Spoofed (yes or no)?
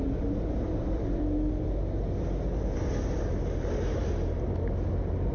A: no